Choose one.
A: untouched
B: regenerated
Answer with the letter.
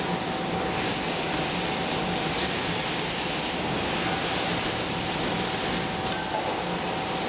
A